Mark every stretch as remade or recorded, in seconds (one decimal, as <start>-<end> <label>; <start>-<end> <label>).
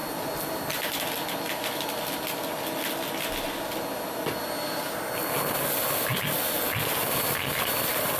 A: 0.0-8.2 recorded